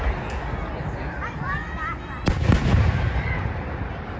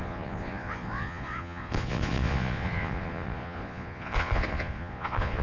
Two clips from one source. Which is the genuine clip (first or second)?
first